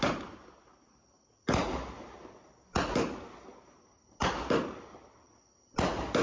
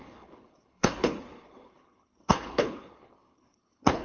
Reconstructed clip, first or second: second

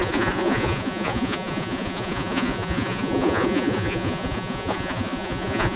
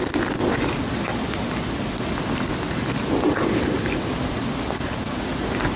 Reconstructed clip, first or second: first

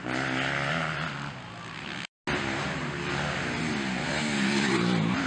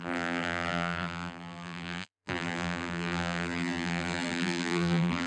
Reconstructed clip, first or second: second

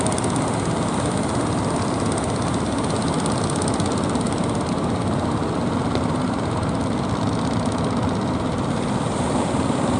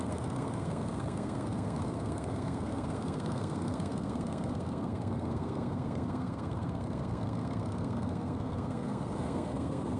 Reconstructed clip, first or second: second